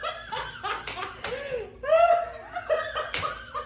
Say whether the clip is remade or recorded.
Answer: recorded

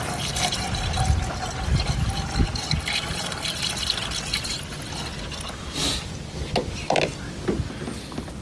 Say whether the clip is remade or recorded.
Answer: recorded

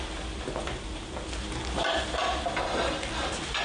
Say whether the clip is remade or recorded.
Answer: recorded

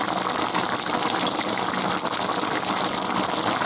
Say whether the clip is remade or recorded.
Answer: recorded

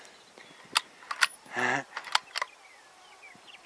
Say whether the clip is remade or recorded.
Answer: recorded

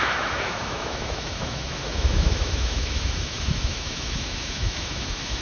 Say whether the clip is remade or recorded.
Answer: remade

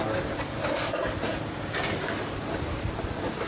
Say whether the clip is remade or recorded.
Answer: recorded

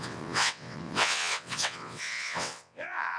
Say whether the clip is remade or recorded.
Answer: remade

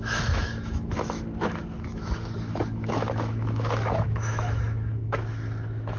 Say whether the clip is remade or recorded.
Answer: remade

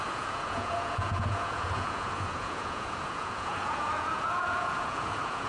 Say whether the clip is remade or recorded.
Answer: remade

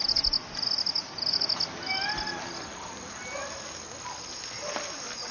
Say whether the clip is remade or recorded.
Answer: recorded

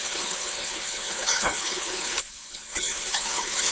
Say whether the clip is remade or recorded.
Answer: remade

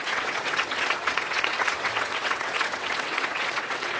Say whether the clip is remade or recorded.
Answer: remade